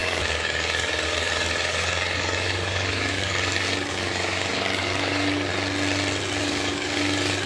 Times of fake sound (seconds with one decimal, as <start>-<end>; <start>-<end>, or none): 0.0-5.5; 6.4-7.5